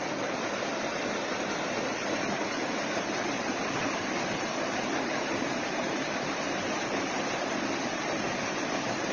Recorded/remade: recorded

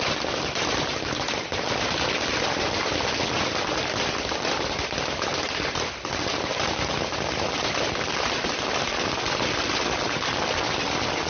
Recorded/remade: recorded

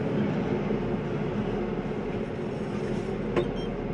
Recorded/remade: recorded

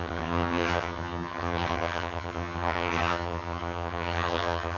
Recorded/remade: remade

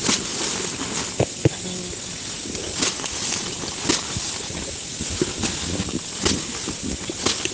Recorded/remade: recorded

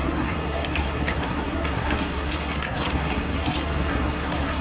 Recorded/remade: remade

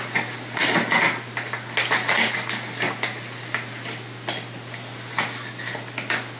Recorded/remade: recorded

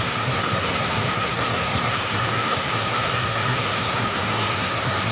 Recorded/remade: remade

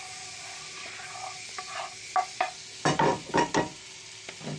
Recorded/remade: recorded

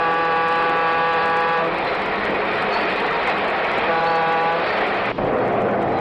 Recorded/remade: recorded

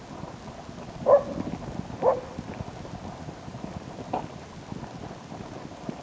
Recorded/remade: recorded